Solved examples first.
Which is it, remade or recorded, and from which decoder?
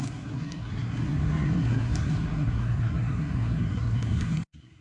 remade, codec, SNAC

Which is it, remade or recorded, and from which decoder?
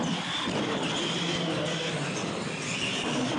recorded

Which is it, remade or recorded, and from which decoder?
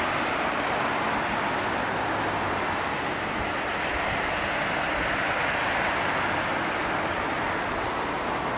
recorded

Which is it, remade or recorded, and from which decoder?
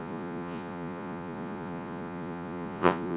remade, vocoder, Vocos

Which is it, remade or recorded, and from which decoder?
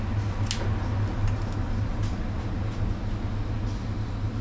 recorded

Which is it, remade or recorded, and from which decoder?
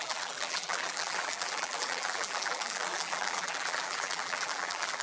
remade, vocoder, BigVGAN v2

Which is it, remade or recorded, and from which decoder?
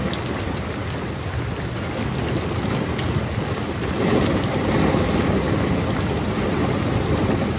recorded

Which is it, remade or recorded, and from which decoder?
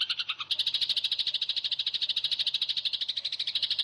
recorded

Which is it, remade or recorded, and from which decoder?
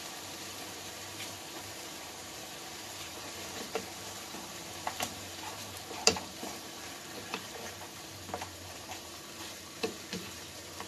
remade, vocoder, BigVGAN v2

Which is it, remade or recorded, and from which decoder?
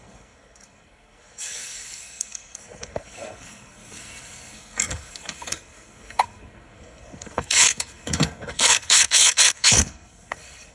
remade, codec, SNAC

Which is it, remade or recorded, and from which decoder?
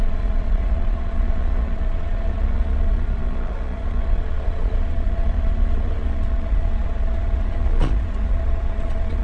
remade, vocoder, Vocos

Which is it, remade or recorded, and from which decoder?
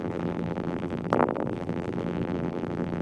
remade, vocoder, BigVGAN v2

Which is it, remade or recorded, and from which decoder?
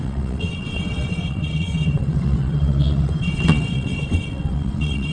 remade, vocoder, WaveNeXt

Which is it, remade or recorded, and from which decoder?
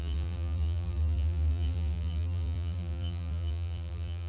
remade, vocoder, BigVGAN v2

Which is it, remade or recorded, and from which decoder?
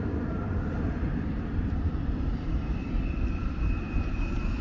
remade, vocoder, BigVGAN v2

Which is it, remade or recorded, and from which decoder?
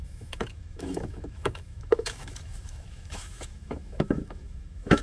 remade, autoencoder, DAC-VAE